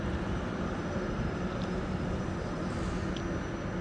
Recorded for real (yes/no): yes